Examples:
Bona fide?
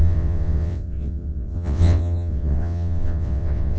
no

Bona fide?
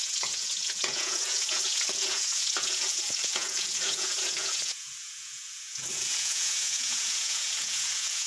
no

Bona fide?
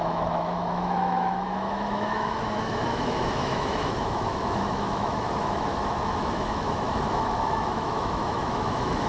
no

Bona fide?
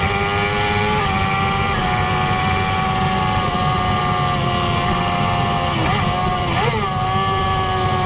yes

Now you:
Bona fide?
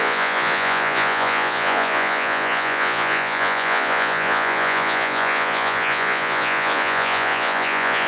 no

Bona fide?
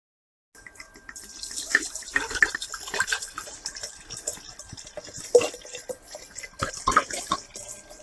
yes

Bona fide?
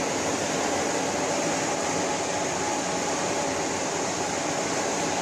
yes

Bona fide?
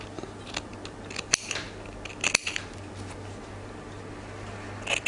yes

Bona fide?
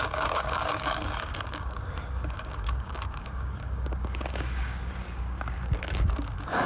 no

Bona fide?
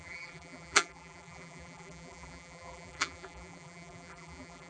no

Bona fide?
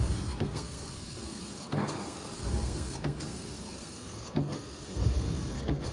no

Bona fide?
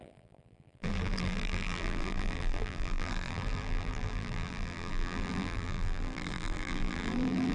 no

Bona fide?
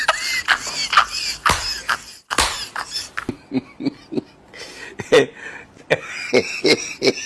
yes